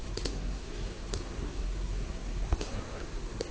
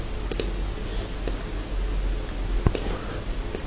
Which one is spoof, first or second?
first